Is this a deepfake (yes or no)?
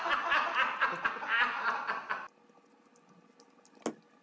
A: no